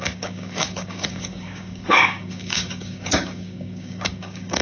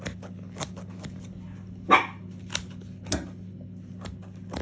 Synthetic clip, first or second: first